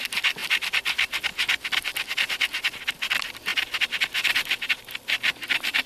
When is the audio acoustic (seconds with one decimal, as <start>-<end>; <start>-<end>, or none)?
0.0-5.9